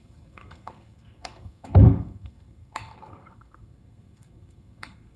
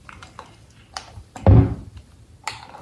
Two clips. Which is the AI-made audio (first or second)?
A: first